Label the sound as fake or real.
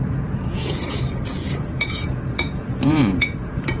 fake